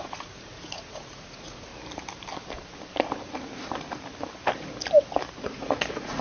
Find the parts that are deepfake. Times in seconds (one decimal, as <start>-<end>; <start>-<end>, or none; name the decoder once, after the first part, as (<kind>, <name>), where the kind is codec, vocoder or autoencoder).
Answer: 0.0-1.7 (vocoder, Vocos); 5.4-6.2